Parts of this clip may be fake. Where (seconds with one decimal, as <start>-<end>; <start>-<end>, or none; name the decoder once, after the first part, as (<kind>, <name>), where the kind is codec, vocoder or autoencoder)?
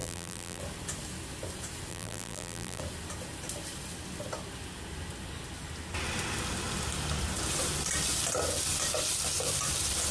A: 0.0-0.6 (vocoder, BigVGAN v2); 1.9-2.8